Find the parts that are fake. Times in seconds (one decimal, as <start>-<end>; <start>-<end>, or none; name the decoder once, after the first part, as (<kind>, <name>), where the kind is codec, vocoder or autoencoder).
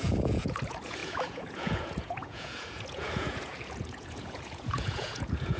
0.0-5.6 (vocoder, Vocos)